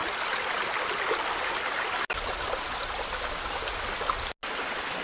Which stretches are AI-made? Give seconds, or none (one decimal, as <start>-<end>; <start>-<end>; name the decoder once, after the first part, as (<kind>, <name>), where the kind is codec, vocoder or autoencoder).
none